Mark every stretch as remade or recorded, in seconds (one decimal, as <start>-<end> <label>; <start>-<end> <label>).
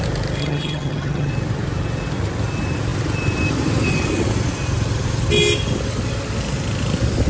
0.0-0.4 recorded; 0.4-1.3 remade; 1.3-7.3 recorded